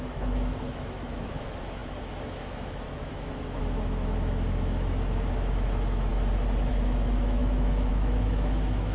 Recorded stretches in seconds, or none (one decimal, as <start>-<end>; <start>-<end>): 6.1-6.7